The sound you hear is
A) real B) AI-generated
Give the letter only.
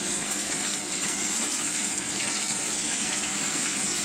B